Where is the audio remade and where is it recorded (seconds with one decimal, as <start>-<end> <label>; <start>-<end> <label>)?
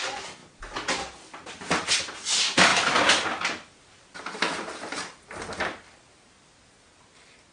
0.0-7.5 recorded